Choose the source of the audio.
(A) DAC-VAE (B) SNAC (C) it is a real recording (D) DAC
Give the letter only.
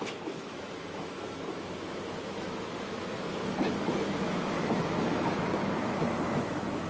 A